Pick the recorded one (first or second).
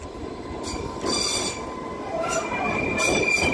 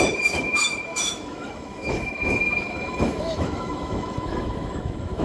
first